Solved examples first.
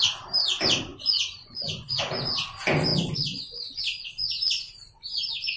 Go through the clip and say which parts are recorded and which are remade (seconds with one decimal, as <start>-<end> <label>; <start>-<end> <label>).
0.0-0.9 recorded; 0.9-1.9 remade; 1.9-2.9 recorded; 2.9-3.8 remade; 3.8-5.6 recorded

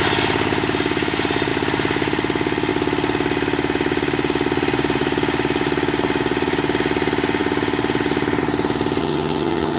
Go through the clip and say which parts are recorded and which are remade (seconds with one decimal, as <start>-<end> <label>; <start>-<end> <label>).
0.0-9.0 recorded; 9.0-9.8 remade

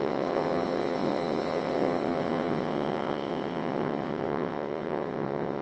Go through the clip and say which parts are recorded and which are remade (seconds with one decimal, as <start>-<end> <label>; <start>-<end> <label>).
0.0-5.6 remade